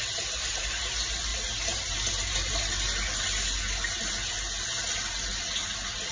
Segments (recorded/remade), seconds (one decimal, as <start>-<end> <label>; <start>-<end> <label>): 0.0-1.3 recorded; 1.3-2.6 remade; 2.6-6.1 recorded

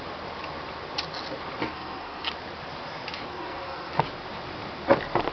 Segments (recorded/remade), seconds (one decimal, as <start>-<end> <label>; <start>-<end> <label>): 0.0-1.6 recorded; 1.6-2.3 remade; 2.3-3.3 recorded; 3.3-3.9 remade; 3.9-5.3 recorded

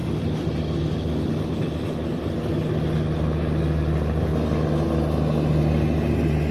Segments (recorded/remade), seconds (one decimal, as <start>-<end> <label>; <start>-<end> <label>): 0.0-6.5 recorded

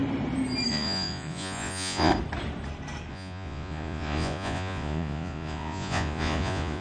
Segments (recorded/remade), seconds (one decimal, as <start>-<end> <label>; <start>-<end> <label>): 0.0-0.7 recorded; 0.7-2.1 remade; 2.1-3.1 recorded; 3.1-6.8 remade

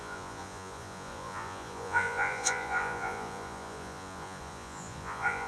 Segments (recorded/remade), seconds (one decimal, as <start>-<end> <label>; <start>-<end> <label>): 0.0-5.5 remade

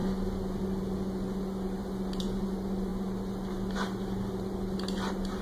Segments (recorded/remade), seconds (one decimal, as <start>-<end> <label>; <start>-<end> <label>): 0.0-5.4 recorded

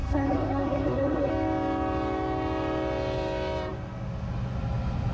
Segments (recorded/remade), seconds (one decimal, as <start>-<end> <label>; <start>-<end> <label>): 0.0-1.3 remade; 1.3-5.1 recorded